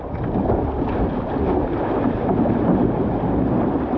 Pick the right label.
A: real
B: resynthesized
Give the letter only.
A